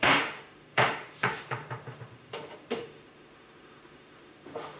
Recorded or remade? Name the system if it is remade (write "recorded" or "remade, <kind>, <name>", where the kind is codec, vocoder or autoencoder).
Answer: remade, autoencoder, DAC-VAE